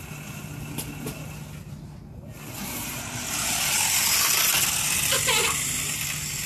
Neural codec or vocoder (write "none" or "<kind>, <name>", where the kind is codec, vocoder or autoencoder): none